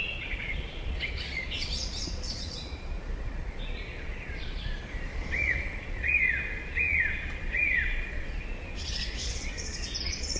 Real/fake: fake